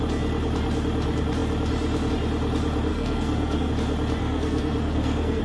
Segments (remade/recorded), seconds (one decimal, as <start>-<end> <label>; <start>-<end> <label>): 0.0-2.9 recorded; 2.9-3.7 remade; 3.7-4.2 recorded; 4.2-5.4 remade